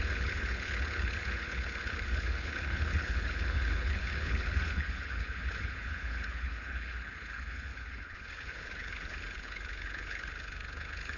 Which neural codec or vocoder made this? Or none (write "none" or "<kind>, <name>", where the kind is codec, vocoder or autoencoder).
codec, HILCodec